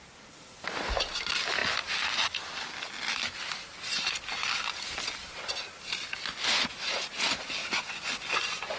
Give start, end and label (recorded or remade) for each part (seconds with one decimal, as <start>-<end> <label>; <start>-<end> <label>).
0.0-7.6 recorded; 7.6-8.8 remade